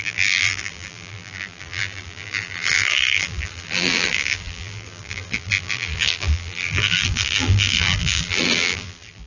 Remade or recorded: remade